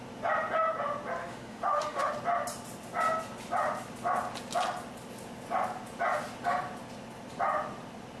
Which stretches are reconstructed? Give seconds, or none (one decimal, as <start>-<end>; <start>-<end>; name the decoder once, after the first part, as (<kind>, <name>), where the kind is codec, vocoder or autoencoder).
1.2-2.1 (autoencoder, DAC-VAE)